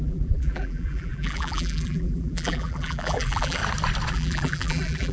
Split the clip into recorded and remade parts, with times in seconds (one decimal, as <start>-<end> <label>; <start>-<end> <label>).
0.0-3.6 remade; 3.6-4.1 recorded; 4.1-5.1 remade